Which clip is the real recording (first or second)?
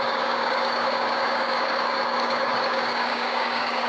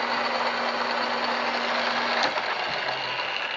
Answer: second